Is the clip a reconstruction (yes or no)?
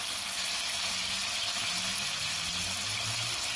no